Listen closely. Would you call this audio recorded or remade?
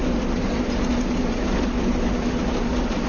recorded